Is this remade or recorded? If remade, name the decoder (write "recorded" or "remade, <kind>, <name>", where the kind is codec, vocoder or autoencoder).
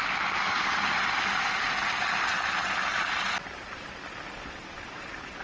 recorded